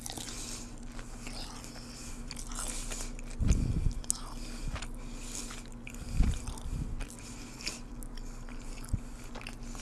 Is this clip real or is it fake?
real